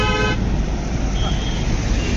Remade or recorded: recorded